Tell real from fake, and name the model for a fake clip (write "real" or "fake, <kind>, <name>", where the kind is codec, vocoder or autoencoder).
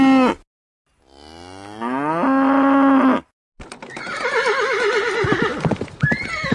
real